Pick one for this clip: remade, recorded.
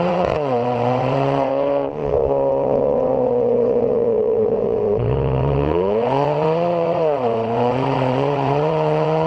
remade